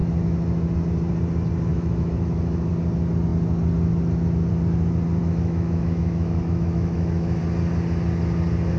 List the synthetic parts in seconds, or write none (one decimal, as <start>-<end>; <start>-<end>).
1.7-2.7; 5.2-7.4